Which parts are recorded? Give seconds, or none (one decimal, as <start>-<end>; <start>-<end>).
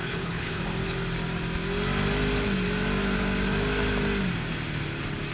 0.6-5.3